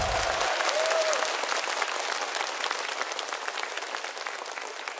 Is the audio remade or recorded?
recorded